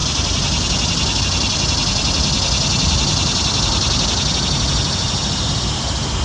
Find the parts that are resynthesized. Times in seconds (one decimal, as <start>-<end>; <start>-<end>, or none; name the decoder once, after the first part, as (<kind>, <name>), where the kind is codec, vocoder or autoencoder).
none